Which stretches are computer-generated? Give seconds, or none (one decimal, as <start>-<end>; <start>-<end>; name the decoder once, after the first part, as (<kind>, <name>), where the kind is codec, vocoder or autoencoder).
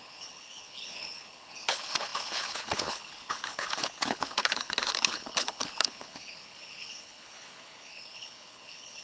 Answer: 0.0-9.0 (codec, HILCodec)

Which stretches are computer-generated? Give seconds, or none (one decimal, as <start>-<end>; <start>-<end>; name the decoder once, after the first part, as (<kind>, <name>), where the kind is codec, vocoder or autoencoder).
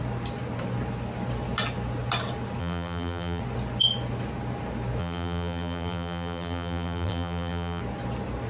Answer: 2.6-3.4 (vocoder, BigVGAN v2); 5.0-7.8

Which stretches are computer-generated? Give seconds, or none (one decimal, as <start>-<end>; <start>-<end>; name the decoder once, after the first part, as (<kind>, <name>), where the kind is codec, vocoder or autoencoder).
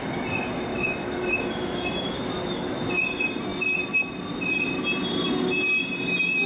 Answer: 0.7-2.9 (autoencoder, DAC-VAE)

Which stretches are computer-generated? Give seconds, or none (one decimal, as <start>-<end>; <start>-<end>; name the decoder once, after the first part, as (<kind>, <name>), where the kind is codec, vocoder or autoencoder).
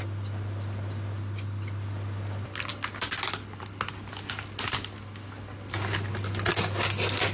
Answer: none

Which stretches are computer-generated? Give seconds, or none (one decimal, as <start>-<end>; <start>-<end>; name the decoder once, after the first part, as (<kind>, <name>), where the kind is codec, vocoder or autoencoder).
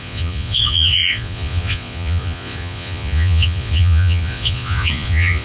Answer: 0.0-5.4 (vocoder, Vocos)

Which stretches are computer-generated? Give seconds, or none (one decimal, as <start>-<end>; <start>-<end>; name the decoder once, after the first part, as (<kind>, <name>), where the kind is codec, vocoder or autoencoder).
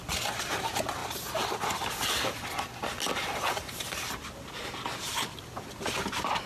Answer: none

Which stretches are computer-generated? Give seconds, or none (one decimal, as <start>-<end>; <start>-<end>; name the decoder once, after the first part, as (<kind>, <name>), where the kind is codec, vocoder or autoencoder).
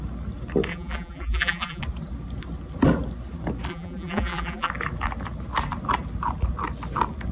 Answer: 0.7-1.8 (vocoder, BigVGAN v2); 3.7-4.7